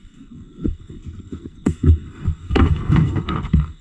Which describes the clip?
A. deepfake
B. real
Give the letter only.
A